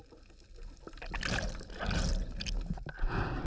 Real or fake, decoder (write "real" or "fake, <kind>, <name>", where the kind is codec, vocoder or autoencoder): real